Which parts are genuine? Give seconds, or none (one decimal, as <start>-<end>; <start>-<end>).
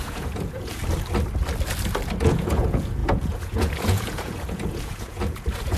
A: 0.8-2.2